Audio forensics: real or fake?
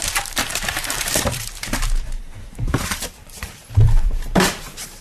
fake